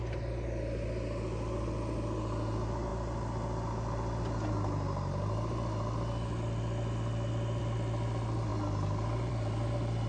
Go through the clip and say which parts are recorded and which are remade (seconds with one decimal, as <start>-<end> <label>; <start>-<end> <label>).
0.0-10.1 recorded